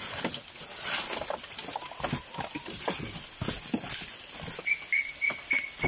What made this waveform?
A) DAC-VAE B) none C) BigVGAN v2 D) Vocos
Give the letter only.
B